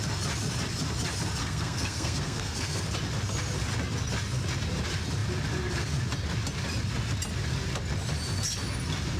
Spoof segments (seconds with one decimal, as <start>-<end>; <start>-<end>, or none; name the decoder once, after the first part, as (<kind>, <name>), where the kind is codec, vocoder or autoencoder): 1.4-2.8 (codec, SNAC)